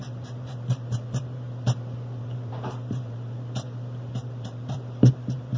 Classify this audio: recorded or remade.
remade